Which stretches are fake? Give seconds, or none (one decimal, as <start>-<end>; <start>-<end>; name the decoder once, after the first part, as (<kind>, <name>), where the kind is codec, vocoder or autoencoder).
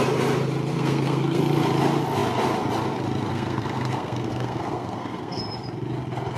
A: 0.7-1.4 (codec, SNAC); 3.3-5.4